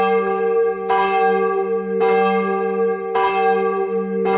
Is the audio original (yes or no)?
yes